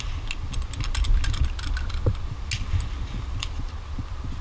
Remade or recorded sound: recorded